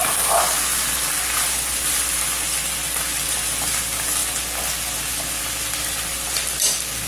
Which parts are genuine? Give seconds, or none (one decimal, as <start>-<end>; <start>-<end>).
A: 0.0-7.1